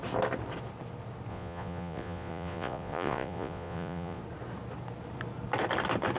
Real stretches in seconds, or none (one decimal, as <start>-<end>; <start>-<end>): 0.0-1.3; 4.2-6.2

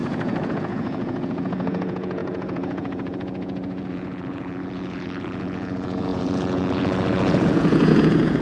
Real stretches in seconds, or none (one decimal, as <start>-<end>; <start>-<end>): none

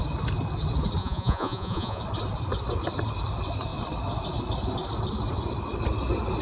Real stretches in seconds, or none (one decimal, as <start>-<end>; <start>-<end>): 0.0-1.0; 2.0-6.4

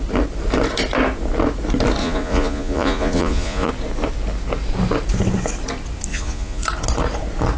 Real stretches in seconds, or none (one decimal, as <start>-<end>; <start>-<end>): 0.0-2.0; 3.7-6.1; 6.6-7.6

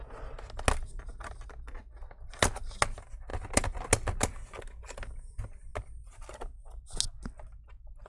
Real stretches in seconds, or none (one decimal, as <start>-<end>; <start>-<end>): 0.0-8.1

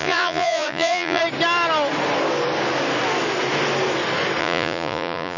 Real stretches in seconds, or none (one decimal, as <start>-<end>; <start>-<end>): 1.2-4.4

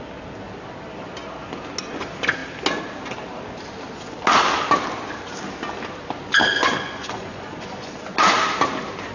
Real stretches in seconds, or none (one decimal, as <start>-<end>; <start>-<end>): 0.0-6.5; 7.9-9.1

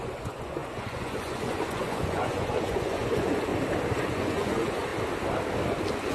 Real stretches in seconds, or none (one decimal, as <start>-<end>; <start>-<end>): 3.5-4.0; 4.9-6.1